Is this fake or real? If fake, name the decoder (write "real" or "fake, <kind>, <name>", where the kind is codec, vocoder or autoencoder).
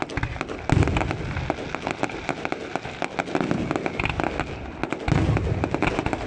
real